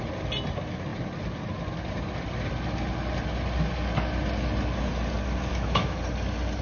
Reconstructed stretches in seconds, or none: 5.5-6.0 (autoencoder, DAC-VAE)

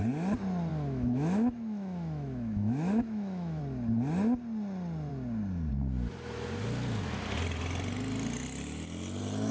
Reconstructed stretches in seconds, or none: 0.7-3.6 (autoencoder, DAC-VAE)

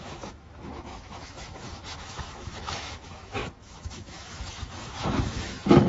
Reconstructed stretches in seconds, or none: 0.0-5.9 (autoencoder, DAC-VAE)

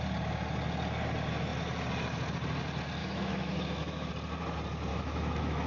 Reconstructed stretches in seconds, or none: 3.0-4.1 (autoencoder, DAC-VAE); 4.9-5.7